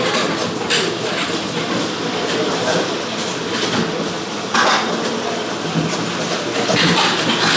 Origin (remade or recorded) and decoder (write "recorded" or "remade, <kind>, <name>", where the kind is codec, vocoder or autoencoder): recorded